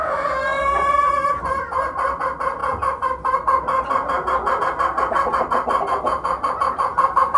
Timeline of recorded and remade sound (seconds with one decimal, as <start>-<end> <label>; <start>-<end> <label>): 0.0-7.4 recorded